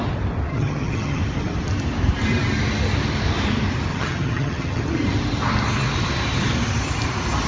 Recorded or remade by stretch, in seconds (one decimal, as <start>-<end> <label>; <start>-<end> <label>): 0.0-0.5 recorded; 0.5-1.2 remade; 1.2-3.9 recorded; 3.9-4.8 remade; 4.8-7.5 recorded